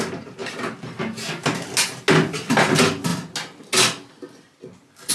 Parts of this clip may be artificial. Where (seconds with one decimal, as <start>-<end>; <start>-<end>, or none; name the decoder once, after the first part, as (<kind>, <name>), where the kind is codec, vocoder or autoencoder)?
none

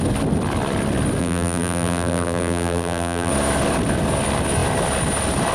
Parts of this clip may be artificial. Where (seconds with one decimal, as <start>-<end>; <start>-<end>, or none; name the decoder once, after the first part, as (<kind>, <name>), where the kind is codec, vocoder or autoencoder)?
1.2-3.3 (vocoder, BigVGAN v2)

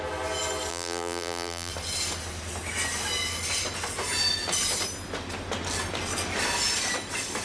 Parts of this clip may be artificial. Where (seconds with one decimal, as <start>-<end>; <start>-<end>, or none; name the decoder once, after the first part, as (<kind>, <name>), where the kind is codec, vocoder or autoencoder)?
0.7-1.7 (vocoder, BigVGAN v2)